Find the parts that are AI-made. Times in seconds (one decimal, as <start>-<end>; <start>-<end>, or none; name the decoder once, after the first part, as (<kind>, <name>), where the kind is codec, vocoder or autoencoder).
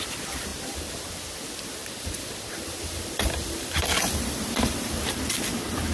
0.5-1.1 (vocoder, BigVGAN v2); 1.8-5.0